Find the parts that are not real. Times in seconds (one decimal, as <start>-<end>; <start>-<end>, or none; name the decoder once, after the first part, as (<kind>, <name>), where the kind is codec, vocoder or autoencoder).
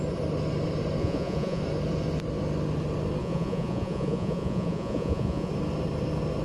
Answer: 1.0-1.6 (vocoder, Vocos); 3.2-5.5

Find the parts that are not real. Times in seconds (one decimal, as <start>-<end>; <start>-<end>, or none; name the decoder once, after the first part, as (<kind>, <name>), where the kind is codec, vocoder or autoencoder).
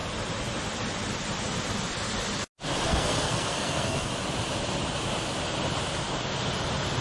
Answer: 2.9-4.1 (codec, SNAC)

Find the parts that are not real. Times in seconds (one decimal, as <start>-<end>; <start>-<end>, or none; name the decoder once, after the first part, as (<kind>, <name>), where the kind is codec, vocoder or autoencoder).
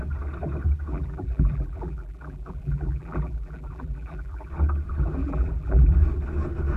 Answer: 0.9-4.5 (vocoder, BigVGAN v2); 5.2-5.9